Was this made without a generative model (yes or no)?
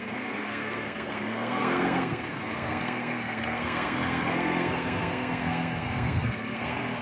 no